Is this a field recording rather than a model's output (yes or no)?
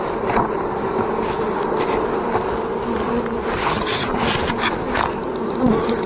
yes